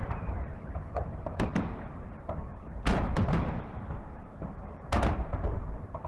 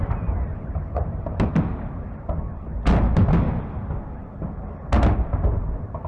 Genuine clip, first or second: second